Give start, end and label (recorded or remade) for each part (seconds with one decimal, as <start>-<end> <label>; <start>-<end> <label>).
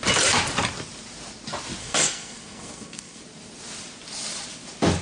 0.0-1.8 recorded; 1.8-3.2 remade; 3.2-5.0 recorded